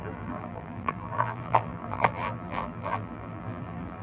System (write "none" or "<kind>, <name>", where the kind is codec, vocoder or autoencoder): vocoder, BigVGAN v2